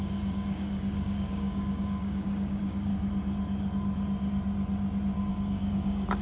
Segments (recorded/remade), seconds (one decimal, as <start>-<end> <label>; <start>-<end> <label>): 0.0-2.9 remade; 2.9-5.3 recorded; 5.3-6.2 remade